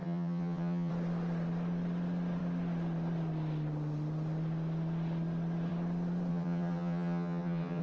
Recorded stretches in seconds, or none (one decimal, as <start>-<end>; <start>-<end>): 0.9-6.3